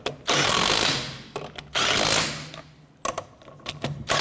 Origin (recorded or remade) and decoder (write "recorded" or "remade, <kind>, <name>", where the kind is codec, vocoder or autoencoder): recorded